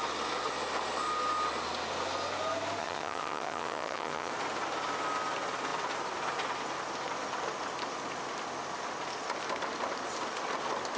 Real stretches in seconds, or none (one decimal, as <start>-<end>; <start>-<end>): 0.0-2.8; 4.3-11.0

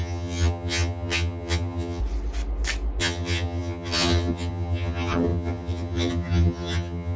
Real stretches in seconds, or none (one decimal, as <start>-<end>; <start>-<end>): 2.0-3.0

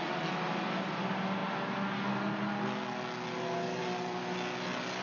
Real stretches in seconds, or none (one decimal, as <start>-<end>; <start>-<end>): 0.0-5.0

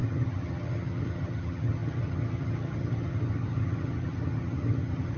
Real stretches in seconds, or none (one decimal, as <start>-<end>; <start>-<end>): none

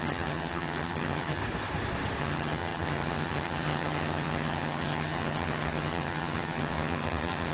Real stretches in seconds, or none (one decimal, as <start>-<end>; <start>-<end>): 1.4-2.2

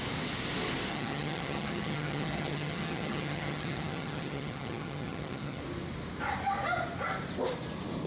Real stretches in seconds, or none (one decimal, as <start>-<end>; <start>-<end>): 0.0-0.9; 5.6-8.1

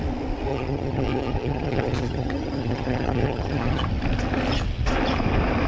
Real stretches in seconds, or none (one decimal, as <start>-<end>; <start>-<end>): 0.0-0.5; 3.9-5.7

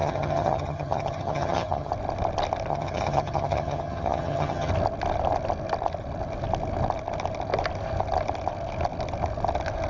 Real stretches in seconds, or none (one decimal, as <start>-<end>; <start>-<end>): 1.9-2.7; 4.7-9.9